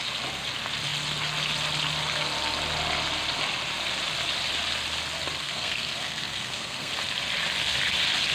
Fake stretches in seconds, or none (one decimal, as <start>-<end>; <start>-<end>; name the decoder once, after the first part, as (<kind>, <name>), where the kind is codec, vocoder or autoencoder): 5.4-6.9 (codec, SNAC)